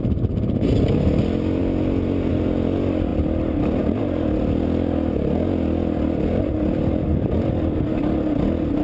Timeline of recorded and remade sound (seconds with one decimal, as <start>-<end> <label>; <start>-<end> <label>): 0.0-8.8 recorded